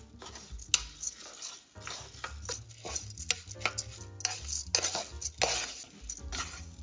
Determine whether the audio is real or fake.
real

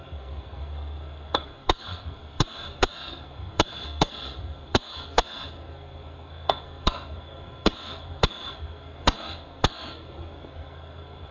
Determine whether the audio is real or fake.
fake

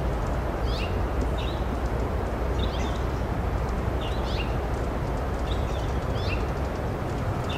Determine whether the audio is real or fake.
real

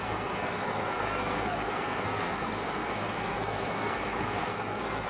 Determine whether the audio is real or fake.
fake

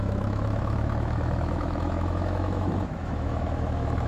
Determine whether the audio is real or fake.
fake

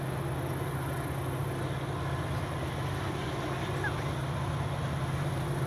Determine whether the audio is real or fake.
real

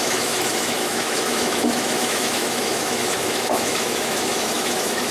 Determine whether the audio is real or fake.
fake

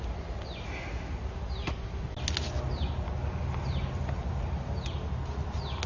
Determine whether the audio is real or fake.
real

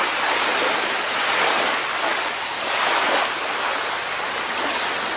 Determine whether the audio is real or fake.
real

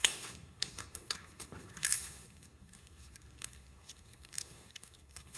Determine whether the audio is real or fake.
fake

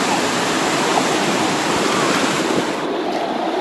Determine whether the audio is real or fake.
real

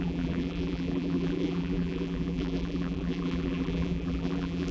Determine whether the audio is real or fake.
fake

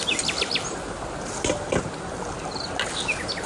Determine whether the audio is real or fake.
real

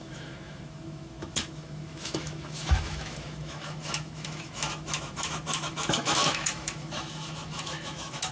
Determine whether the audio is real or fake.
fake